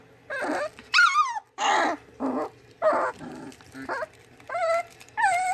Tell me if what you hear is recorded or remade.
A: remade